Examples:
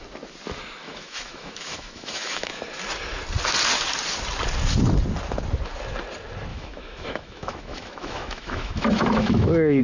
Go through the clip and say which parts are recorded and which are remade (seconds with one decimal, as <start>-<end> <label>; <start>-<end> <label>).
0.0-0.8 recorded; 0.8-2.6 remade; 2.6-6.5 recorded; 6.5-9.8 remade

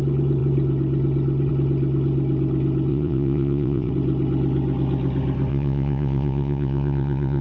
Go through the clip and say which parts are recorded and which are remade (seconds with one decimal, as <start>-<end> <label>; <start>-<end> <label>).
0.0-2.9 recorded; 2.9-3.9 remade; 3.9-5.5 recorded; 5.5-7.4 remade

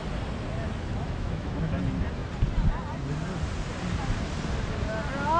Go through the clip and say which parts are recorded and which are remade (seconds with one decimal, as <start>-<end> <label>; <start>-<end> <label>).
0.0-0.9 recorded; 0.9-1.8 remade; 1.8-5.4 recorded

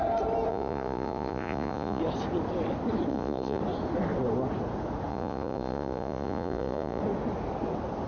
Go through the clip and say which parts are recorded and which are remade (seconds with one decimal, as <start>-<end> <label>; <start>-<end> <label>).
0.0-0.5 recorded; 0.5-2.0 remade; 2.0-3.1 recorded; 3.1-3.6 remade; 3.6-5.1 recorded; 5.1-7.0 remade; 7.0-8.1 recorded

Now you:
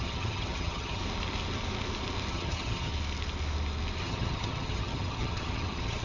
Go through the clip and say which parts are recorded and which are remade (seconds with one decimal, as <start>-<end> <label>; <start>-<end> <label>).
0.0-1.0 remade; 1.0-2.3 recorded; 2.3-2.9 remade; 2.9-4.0 recorded; 4.0-6.0 remade

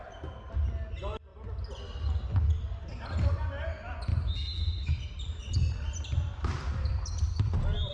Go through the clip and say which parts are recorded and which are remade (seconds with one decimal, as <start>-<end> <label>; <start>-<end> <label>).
0.0-4.1 recorded; 4.1-4.9 remade; 4.9-7.9 recorded

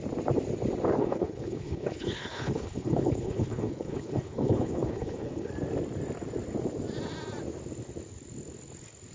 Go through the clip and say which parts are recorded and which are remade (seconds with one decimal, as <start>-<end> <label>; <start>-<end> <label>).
0.0-1.0 recorded; 1.0-5.5 remade; 5.5-9.1 recorded

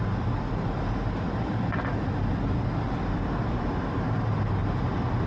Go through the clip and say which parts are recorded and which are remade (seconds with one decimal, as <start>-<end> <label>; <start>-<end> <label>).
0.0-5.3 recorded